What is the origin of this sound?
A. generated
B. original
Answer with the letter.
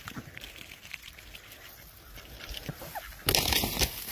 A